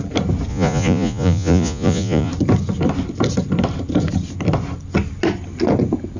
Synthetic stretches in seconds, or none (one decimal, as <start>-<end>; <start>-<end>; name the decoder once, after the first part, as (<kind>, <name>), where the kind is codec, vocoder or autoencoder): 0.5-2.3 (vocoder, Vocos)